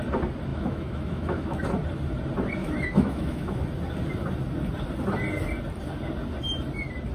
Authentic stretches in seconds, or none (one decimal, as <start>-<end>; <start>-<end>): 0.0-0.5; 1.6-2.6; 3.6-7.1